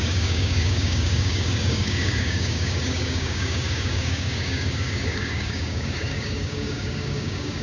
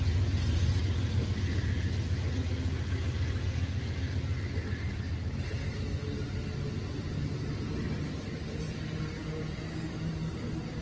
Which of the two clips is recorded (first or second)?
second